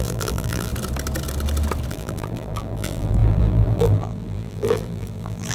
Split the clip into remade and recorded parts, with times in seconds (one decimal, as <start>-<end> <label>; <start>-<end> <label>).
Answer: 0.0-0.7 remade; 0.7-1.9 recorded; 1.9-5.5 remade